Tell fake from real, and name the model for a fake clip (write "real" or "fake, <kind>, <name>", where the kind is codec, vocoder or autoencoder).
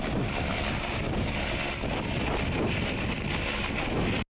real